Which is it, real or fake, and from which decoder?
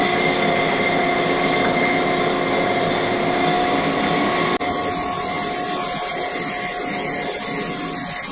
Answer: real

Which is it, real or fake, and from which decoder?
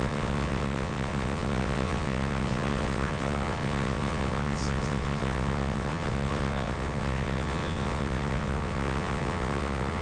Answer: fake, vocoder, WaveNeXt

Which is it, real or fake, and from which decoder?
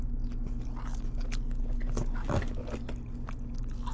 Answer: real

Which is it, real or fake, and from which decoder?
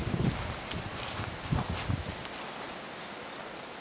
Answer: real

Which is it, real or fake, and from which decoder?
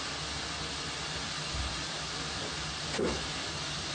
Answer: real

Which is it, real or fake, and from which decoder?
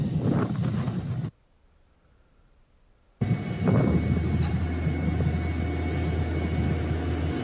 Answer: real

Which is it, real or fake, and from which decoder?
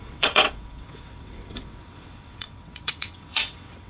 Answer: fake, vocoder, WaveNeXt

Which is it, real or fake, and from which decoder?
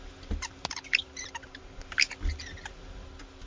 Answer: real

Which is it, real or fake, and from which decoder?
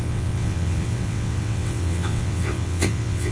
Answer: fake, vocoder, WaveNeXt